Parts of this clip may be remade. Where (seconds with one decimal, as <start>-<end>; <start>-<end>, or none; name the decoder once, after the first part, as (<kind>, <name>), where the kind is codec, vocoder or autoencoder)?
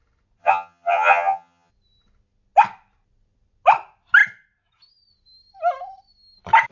0.4-1.7 (vocoder, HiFi-GAN)